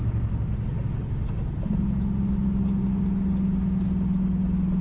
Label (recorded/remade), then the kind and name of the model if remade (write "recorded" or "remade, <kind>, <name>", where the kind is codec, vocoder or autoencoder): recorded